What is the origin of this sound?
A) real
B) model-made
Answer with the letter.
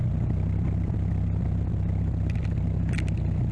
A